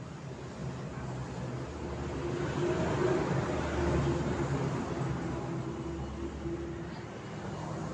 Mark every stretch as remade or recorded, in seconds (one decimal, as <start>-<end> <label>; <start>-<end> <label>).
0.0-7.9 recorded